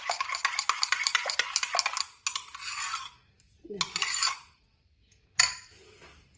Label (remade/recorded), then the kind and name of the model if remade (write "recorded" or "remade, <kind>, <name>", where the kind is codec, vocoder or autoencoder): recorded